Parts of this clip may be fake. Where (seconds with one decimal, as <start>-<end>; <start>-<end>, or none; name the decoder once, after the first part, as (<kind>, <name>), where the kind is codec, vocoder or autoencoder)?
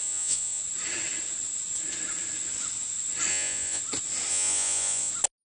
0.0-0.6 (vocoder, Vocos); 3.3-3.8; 4.3-5.1